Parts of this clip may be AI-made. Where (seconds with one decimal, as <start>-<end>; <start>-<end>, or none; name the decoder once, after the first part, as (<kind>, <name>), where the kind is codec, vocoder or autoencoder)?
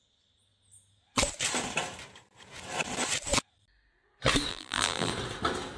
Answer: 4.5-5.1 (vocoder, BigVGAN v2)